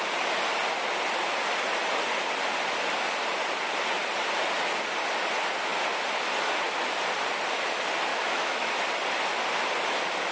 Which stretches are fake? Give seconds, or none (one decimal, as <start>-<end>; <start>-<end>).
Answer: 8.1-8.7